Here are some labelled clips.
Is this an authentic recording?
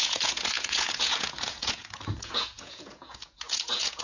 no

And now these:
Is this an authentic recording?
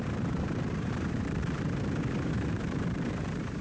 no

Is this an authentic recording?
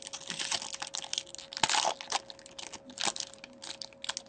yes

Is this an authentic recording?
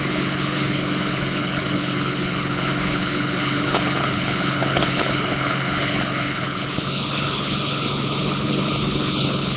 no